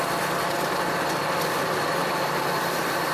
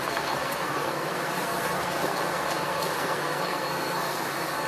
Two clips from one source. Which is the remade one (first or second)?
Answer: second